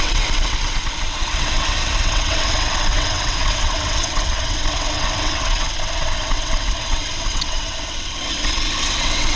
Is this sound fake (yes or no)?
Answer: yes